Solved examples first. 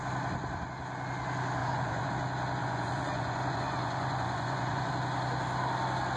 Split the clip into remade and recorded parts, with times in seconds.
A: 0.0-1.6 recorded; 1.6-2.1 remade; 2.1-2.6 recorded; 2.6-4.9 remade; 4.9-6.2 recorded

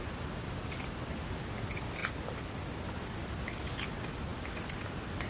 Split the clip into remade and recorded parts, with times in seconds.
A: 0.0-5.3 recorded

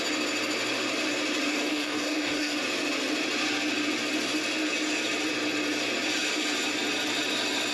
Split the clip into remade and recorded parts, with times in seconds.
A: 0.0-1.5 recorded; 1.5-2.6 remade; 2.6-7.7 recorded

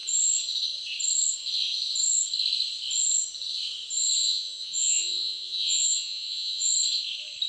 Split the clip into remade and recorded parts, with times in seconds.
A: 0.0-4.2 recorded; 4.2-6.7 remade; 6.7-7.5 recorded